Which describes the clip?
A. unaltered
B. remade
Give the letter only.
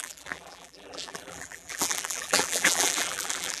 B